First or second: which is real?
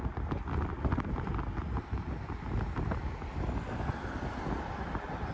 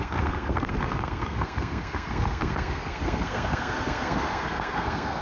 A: first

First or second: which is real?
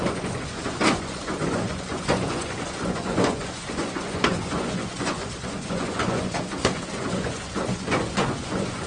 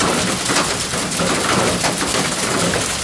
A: second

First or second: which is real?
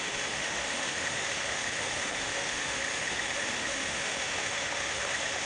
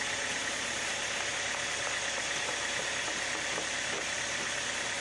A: second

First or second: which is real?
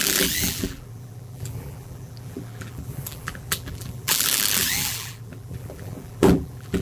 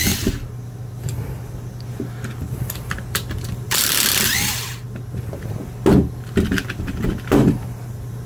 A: second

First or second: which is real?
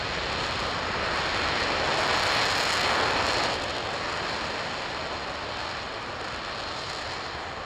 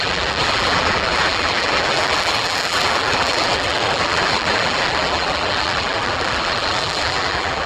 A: first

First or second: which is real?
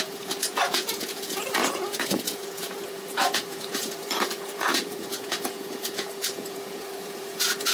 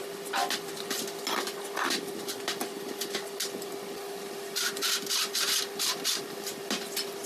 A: second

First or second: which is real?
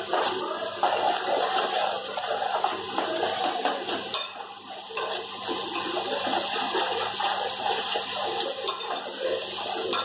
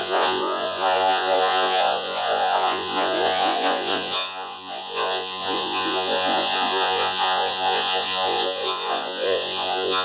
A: first